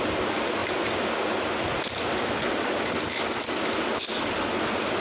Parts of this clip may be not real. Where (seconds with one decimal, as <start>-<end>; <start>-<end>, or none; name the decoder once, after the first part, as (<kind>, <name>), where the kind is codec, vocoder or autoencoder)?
none